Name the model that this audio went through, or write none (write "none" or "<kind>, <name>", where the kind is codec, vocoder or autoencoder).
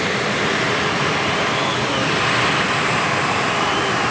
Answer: none